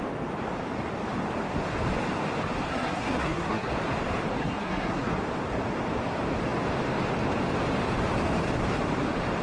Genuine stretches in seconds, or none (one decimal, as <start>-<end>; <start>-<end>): 0.0-2.7; 3.7-4.4; 5.2-9.4